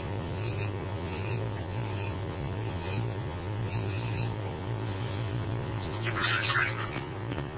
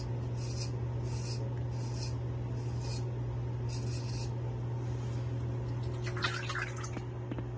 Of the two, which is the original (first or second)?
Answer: second